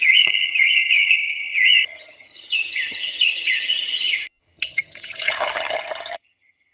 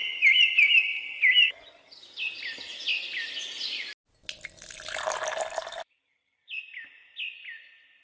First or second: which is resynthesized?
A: first